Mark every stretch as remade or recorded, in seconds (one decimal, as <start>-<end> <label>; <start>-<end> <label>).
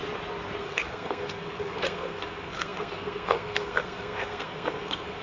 0.0-0.6 recorded; 0.6-5.2 remade